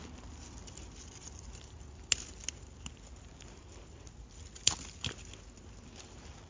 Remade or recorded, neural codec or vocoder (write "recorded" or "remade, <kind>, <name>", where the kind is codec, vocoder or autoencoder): recorded